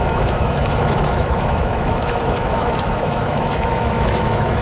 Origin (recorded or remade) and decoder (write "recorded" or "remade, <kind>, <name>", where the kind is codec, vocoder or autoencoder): remade, autoencoder, DAC-VAE